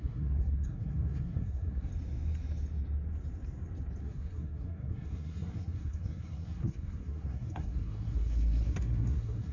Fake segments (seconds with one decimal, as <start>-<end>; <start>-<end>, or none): 0.0-1.9; 4.0-9.5